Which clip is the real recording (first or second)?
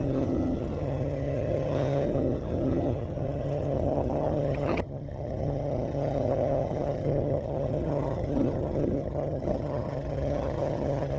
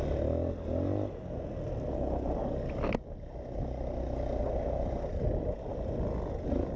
second